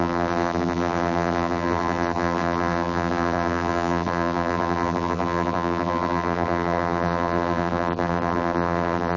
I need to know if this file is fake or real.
fake